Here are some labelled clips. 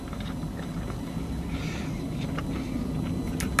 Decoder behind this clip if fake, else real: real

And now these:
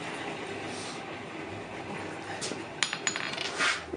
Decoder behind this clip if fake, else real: real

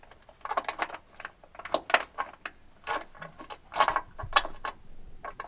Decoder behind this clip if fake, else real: real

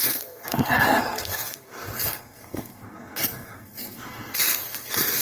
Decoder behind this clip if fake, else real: fake, codec, SNAC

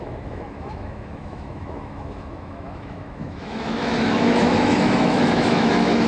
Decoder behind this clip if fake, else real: fake, autoencoder, DAC-VAE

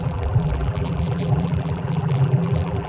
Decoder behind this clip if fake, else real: fake, vocoder, BigVGAN v2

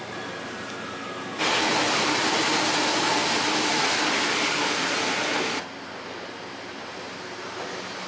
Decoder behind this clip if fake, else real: real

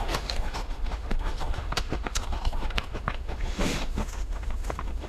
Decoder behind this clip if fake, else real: fake, autoencoder, DAC-VAE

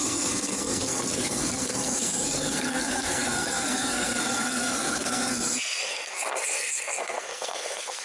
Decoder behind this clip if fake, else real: fake, codec, SNAC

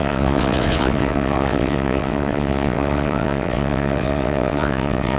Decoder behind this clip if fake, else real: fake, vocoder, WaveNeXt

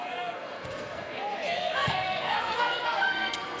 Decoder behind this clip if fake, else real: fake, codec, SNAC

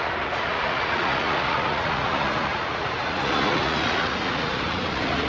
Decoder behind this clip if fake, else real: fake, vocoder, Vocos